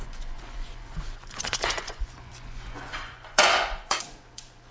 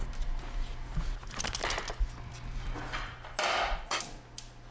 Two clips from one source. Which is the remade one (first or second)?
first